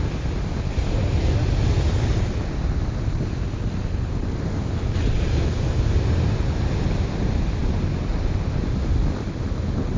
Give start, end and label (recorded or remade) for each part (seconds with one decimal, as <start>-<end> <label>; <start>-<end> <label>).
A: 0.0-10.0 recorded